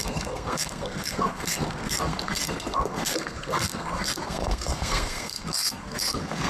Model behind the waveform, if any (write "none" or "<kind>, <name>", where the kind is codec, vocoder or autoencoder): codec, SNAC